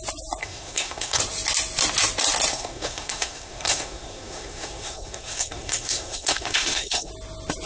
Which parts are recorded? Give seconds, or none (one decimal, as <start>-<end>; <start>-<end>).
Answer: 0.0-0.4; 1.2-2.5; 7.1-7.7